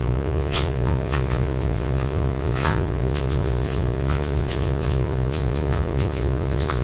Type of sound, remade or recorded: remade